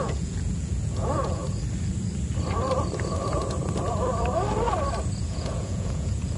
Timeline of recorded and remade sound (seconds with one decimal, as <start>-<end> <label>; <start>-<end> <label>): 0.0-1.4 remade; 1.4-5.2 recorded; 5.2-6.4 remade

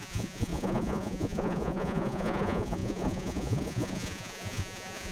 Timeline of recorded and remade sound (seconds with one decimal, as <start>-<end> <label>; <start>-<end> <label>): 0.0-5.1 remade

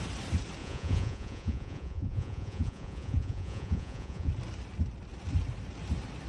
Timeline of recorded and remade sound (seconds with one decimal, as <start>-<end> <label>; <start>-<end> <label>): 0.0-0.6 recorded; 0.6-4.3 remade; 4.3-6.3 recorded

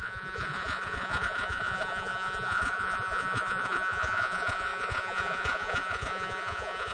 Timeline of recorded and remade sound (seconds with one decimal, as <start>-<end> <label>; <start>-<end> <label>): 0.0-6.9 remade